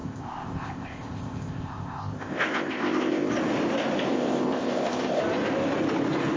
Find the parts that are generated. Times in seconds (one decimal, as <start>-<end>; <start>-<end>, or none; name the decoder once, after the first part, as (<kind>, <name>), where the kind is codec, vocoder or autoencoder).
0.0-3.3 (codec, ZipCodec); 4.1-5.2